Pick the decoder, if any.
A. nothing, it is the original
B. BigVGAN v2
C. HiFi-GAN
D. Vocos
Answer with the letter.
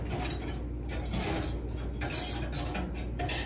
A